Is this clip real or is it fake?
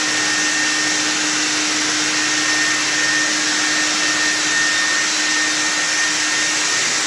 real